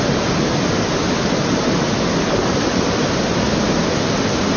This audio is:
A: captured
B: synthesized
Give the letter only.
A